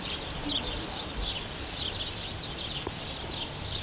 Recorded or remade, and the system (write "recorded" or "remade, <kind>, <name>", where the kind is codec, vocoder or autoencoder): recorded